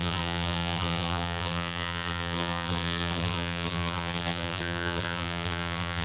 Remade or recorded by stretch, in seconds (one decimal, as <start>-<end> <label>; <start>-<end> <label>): 0.0-6.0 remade